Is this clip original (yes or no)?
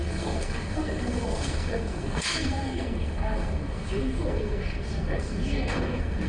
no